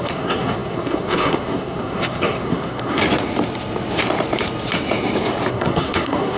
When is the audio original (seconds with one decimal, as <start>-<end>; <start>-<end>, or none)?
3.0-5.5